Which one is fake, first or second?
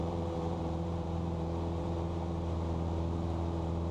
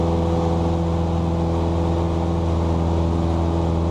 first